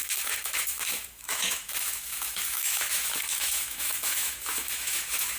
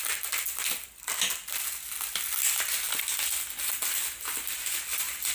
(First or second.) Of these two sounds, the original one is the second